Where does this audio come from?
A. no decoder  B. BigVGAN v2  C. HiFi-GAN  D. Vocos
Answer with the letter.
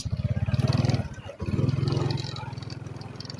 A